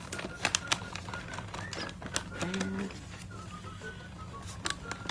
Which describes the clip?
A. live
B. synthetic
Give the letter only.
A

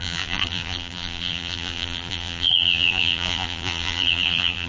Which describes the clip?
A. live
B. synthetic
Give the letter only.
B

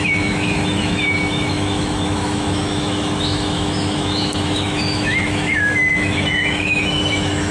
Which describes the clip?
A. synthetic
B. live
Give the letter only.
A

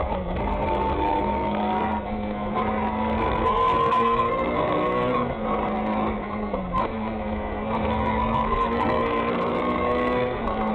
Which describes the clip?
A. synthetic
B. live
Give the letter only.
A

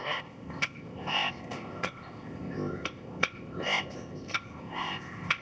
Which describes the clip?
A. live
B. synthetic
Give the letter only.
B